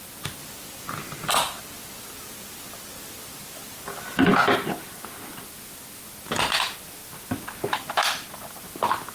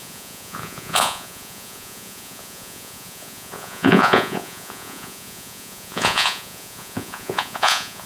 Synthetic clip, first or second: second